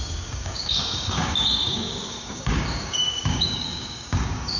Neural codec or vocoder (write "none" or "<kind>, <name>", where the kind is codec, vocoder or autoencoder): codec, DAC